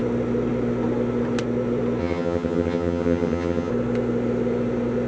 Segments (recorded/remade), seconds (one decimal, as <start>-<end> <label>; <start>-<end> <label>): 0.0-2.0 recorded; 2.0-3.7 remade; 3.7-5.1 recorded